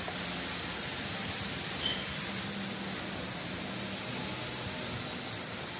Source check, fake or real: real